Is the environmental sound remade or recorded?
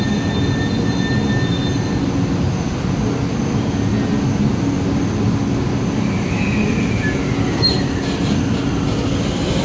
recorded